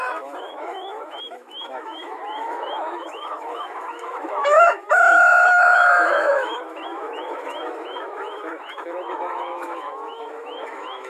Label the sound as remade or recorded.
remade